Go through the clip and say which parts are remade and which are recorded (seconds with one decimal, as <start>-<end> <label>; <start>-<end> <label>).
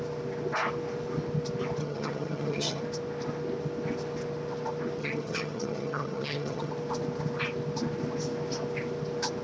0.0-1.8 recorded; 1.8-2.8 remade; 2.8-5.0 recorded; 5.0-6.7 remade; 6.7-9.4 recorded